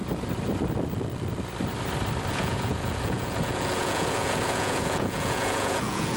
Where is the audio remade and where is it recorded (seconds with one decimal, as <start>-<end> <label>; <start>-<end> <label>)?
0.0-2.3 recorded; 2.3-6.2 remade